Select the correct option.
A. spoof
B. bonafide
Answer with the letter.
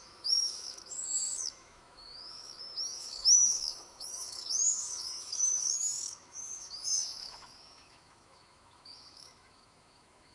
A